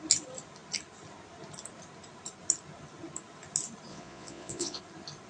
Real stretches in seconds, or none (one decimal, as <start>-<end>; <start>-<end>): 0.0-3.9; 4.8-5.3